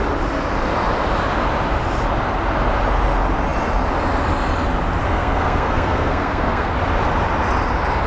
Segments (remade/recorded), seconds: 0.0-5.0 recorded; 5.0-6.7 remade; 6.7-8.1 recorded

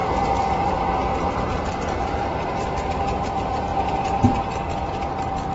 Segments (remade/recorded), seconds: 0.0-3.1 remade; 3.1-5.5 recorded

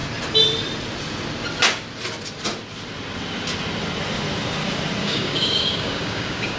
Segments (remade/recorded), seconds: 0.0-5.0 recorded; 5.0-6.6 remade

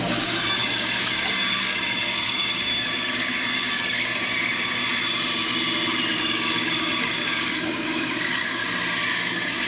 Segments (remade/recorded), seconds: 0.0-4.8 remade; 4.8-6.2 recorded; 6.2-8.6 remade; 8.6-9.1 recorded; 9.1-9.7 remade

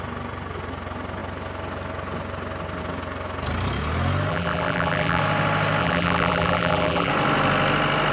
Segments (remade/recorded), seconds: 0.0-4.3 recorded; 4.3-5.2 remade; 5.2-5.8 recorded; 5.8-7.1 remade; 7.1-8.1 recorded